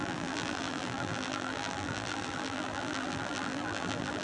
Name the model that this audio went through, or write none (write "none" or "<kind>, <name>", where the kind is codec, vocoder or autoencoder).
vocoder, BigVGAN v2